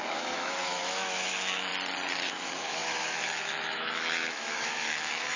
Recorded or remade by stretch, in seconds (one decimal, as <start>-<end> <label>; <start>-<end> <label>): 0.0-1.7 remade; 1.7-2.3 recorded; 2.3-5.4 remade